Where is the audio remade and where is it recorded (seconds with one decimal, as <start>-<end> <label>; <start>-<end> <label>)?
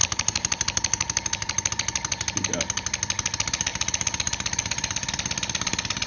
0.0-1.7 remade; 1.7-3.7 recorded; 3.7-5.1 remade; 5.1-6.1 recorded